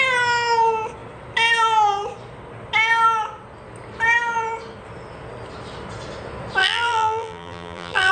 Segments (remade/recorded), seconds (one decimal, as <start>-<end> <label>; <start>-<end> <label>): 0.0-6.6 recorded; 6.6-8.1 remade